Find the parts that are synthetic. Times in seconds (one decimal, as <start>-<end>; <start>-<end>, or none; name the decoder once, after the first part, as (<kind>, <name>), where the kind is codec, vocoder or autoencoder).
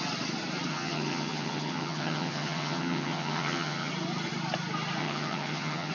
0.7-3.9 (vocoder, HiFi-GAN); 5.0-5.9